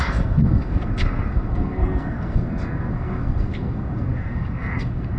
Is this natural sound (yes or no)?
no